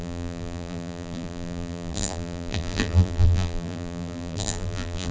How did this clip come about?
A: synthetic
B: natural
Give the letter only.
A